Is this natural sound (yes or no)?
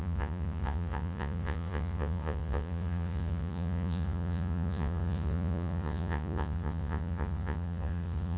no